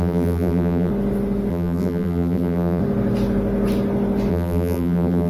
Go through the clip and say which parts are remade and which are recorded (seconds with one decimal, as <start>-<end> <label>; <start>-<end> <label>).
0.0-0.9 remade; 0.9-1.5 recorded; 1.5-2.8 remade; 2.8-4.3 recorded; 4.3-5.3 remade